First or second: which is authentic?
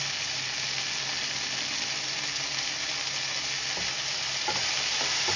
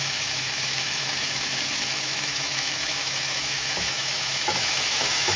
first